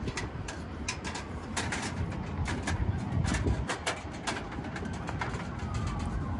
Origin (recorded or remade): recorded